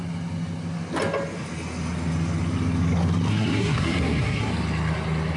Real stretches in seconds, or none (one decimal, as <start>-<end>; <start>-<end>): 0.0-3.3; 4.5-5.4